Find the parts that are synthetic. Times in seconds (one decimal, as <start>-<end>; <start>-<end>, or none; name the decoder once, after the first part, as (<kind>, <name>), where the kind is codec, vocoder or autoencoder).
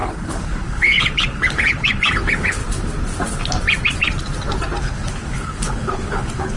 0.0-2.6 (codec, HILCodec); 4.8-6.6